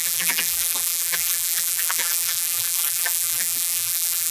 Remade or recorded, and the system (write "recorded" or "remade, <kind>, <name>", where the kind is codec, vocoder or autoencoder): remade, vocoder, BigVGAN v2